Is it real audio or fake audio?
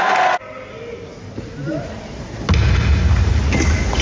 real